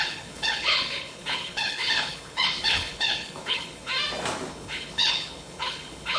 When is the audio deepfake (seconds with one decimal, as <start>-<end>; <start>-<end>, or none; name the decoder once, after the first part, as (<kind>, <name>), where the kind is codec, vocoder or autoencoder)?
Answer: 0.0-3.9 (codec, HILCodec); 4.5-6.2